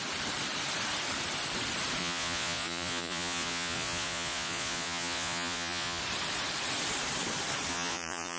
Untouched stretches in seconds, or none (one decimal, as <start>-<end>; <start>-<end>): 0.0-2.0; 6.0-7.7